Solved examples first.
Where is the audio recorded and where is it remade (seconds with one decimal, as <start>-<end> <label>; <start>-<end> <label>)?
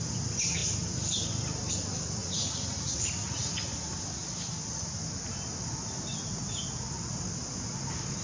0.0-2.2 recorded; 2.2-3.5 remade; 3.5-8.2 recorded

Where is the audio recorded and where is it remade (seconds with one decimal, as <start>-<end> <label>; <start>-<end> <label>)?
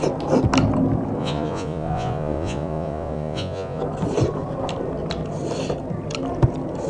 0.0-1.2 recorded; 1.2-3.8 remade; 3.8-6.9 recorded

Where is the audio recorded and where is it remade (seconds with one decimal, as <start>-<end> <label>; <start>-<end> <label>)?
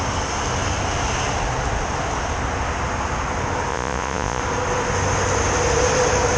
0.0-3.7 recorded; 3.7-4.4 remade; 4.4-6.4 recorded